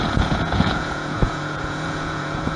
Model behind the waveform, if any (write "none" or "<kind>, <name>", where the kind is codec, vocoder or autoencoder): vocoder, Vocos